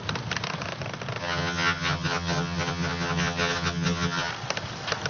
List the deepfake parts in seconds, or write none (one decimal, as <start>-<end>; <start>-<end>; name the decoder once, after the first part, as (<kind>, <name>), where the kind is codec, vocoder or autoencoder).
1.2-4.3 (vocoder, HiFi-GAN)